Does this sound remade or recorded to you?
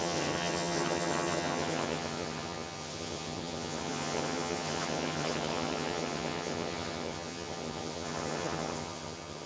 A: remade